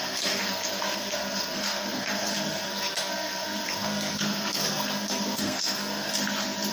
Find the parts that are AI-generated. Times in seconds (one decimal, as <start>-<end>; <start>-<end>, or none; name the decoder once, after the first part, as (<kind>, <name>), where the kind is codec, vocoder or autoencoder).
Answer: 0.0-6.1 (codec, SNAC)